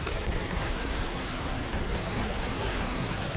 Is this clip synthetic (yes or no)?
yes